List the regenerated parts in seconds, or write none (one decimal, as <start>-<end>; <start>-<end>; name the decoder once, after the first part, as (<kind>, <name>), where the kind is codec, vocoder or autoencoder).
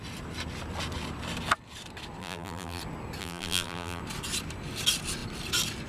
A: 2.2-2.8 (vocoder, BigVGAN v2); 3.2-4.0